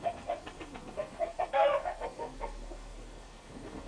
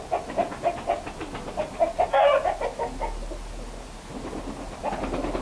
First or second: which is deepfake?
first